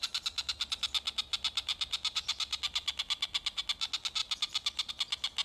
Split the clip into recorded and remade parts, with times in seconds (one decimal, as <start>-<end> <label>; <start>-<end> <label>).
0.0-1.3 recorded; 1.3-3.6 remade; 3.6-4.2 recorded; 4.2-4.9 remade; 4.9-5.4 recorded

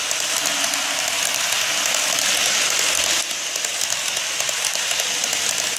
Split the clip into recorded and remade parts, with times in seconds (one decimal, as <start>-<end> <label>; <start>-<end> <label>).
0.0-5.8 recorded

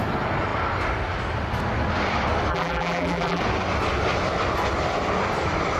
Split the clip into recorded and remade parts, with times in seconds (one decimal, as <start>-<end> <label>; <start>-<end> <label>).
0.0-2.5 recorded; 2.5-3.4 remade; 3.4-5.8 recorded

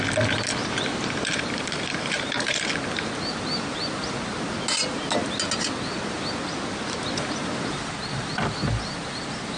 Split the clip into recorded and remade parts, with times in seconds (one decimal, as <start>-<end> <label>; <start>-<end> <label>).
0.0-0.6 recorded; 0.6-2.7 remade; 2.7-9.6 recorded

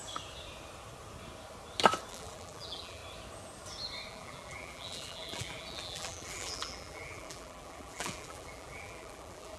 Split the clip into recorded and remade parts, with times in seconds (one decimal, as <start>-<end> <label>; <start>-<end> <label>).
0.0-2.1 recorded; 2.1-3.0 remade; 3.0-4.1 recorded; 4.1-9.6 remade